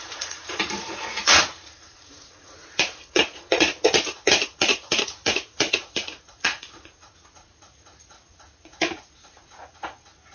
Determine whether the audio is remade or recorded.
remade